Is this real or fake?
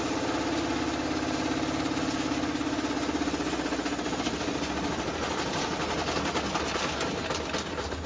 real